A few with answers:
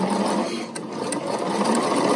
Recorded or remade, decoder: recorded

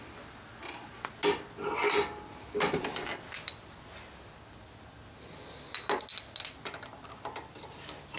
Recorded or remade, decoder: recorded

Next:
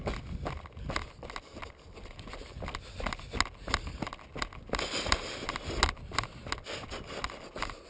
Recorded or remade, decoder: recorded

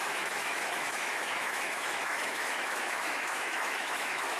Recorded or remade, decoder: remade, autoencoder, DAC-VAE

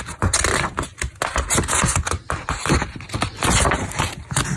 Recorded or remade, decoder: recorded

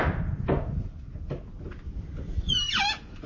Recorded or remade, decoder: recorded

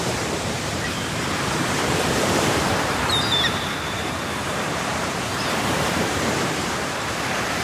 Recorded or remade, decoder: remade, vocoder, BigVGAN v2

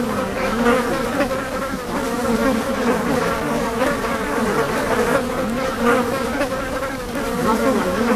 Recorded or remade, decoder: remade, codec, DAC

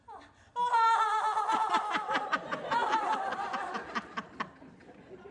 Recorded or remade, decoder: recorded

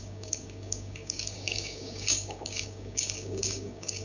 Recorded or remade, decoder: remade, codec, DAC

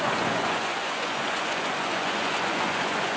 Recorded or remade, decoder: remade, vocoder, Vocos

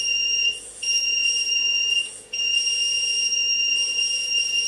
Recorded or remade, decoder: remade, vocoder, Vocos